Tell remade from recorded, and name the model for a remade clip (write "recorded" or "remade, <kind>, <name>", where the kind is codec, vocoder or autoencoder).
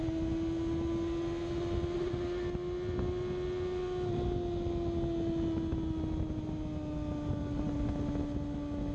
recorded